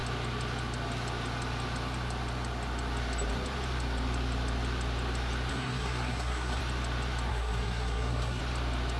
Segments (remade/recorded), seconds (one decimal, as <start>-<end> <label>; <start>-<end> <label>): 0.0-5.5 recorded; 5.5-6.6 remade; 6.6-7.3 recorded; 7.3-8.4 remade; 8.4-9.0 recorded